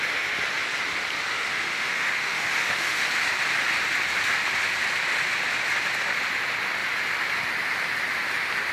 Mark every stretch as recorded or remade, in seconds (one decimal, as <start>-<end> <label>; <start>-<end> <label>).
0.0-1.3 recorded; 1.3-3.1 remade; 3.1-8.7 recorded